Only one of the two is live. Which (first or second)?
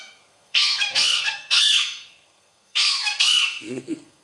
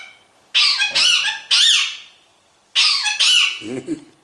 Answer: second